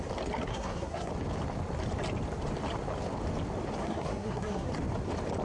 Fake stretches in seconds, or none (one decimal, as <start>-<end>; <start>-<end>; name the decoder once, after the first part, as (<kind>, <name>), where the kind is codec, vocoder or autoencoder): 0.5-1.1 (codec, SNAC); 3.8-4.7